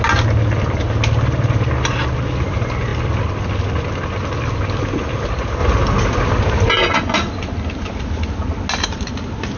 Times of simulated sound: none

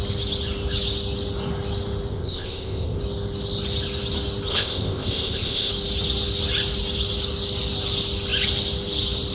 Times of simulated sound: 2.1-3.0 (codec, ZipCodec); 4.5-5.7

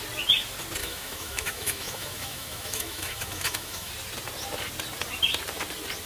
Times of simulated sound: 0.8-3.9 (autoencoder, DAC-VAE)